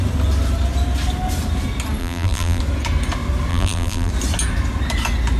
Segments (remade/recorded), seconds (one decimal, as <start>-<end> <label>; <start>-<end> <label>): 0.0-2.0 recorded; 2.0-2.6 remade; 2.6-3.5 recorded; 3.5-4.1 remade; 4.1-5.4 recorded